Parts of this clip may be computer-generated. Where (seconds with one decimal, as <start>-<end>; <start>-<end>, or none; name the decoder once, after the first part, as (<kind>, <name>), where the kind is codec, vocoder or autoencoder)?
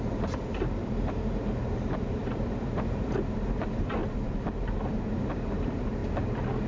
0.0-4.0 (vocoder, BigVGAN v2); 5.3-6.0